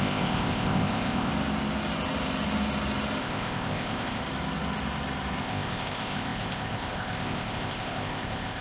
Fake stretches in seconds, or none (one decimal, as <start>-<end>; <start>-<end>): 0.0-1.3; 3.2-4.2; 5.4-8.6